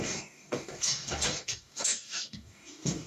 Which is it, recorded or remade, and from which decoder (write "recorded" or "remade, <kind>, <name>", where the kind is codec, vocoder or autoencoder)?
remade, codec, DAC